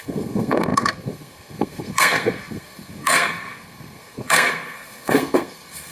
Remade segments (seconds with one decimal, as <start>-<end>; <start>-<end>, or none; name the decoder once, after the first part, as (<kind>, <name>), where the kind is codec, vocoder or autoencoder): 0.0-5.9 (codec, SNAC)